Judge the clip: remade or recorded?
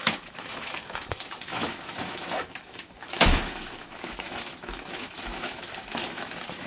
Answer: remade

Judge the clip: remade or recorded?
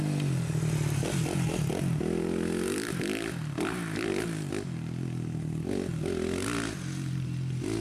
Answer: recorded